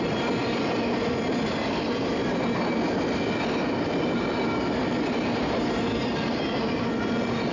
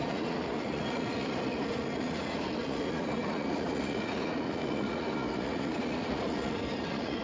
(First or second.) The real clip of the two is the first